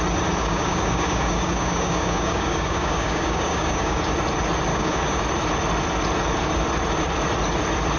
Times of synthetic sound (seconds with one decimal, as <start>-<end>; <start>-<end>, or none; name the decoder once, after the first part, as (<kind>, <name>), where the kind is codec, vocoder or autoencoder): 0.4-4.0 (codec, DAC); 4.7-5.2